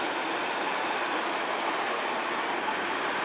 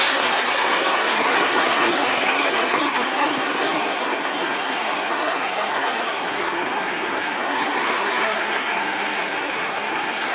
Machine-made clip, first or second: second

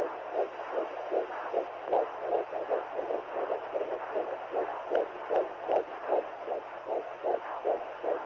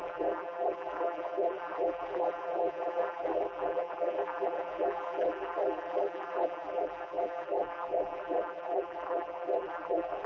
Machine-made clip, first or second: second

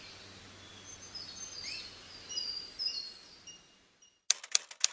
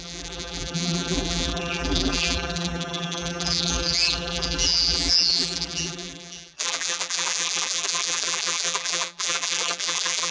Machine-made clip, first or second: second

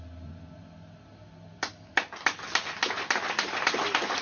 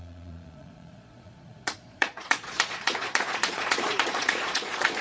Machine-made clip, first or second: second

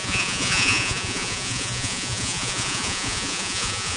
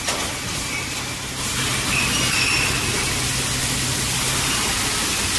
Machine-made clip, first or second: first